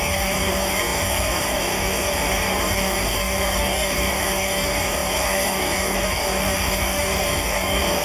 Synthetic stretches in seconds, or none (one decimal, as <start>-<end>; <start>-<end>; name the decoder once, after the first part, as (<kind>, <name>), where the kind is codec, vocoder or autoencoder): 0.0-8.0 (codec, DAC)